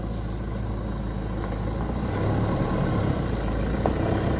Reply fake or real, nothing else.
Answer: real